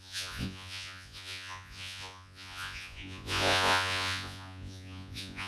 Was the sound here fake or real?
fake